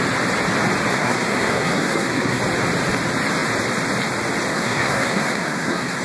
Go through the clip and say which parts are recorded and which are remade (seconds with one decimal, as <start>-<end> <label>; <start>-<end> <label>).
0.0-0.9 recorded; 0.9-2.4 remade; 2.4-4.5 recorded; 4.5-6.0 remade